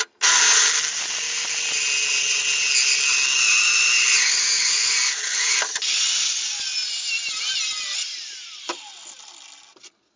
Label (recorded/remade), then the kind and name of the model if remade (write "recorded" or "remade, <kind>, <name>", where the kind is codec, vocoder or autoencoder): recorded